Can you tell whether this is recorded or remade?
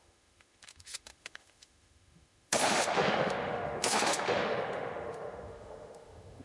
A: remade